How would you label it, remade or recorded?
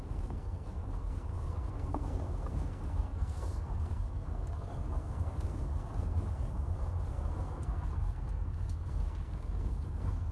remade